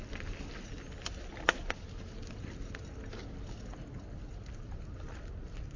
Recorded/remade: recorded